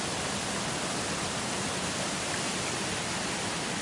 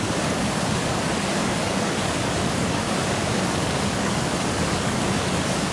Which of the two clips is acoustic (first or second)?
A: first